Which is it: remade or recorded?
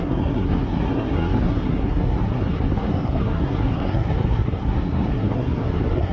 remade